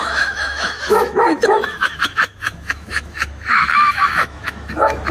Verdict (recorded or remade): remade